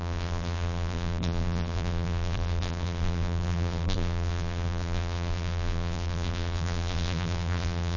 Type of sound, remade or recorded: remade